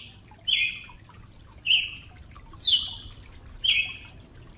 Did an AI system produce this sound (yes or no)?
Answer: no